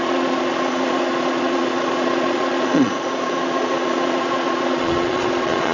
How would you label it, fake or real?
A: fake